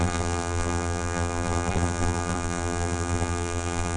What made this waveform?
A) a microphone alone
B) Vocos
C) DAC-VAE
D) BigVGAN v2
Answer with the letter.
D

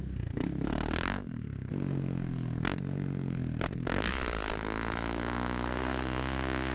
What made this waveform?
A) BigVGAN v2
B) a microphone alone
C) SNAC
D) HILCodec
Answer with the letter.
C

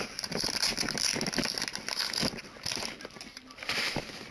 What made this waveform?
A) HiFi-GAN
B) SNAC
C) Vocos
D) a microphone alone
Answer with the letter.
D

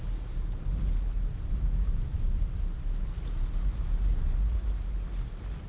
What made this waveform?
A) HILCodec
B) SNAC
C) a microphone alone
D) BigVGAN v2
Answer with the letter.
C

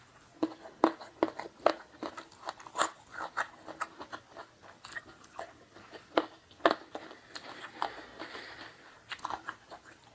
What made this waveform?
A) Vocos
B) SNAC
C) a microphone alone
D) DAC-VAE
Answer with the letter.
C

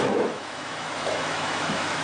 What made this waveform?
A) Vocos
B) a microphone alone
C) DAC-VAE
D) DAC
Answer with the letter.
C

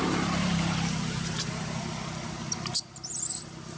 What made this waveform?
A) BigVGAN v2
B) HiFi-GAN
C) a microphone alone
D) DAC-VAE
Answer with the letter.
A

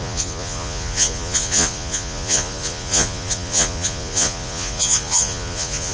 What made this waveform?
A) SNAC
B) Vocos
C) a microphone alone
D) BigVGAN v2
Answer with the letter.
B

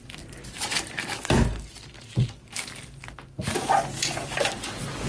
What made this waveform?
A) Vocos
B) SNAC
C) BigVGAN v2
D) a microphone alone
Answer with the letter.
D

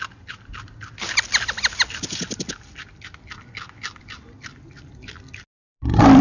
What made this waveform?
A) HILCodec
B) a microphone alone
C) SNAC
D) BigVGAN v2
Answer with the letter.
B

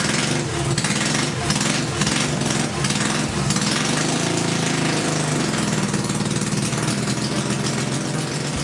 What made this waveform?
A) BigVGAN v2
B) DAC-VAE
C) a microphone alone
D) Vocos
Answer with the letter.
C